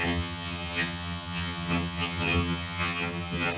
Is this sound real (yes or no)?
no